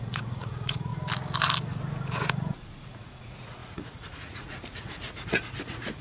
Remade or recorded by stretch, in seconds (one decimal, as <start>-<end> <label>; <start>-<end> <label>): 0.0-0.9 remade; 0.9-1.6 recorded; 1.6-6.0 remade